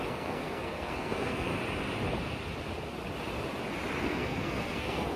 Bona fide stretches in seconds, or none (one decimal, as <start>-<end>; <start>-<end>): 1.5-4.0